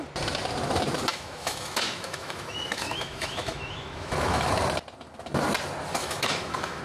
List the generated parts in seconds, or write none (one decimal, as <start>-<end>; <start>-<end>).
1.1-4.5; 6.0-6.8